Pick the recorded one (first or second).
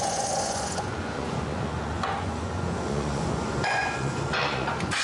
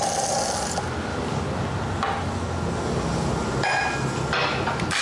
second